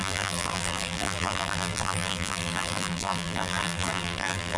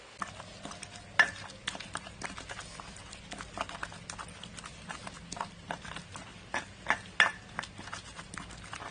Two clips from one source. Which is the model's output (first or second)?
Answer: first